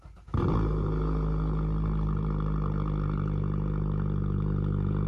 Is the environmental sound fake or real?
real